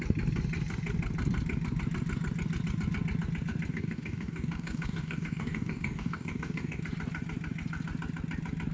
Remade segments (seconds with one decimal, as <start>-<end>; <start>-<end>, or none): 3.7-6.8